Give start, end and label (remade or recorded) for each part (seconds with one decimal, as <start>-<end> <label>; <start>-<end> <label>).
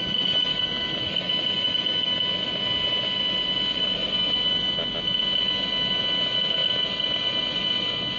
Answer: 0.0-8.2 recorded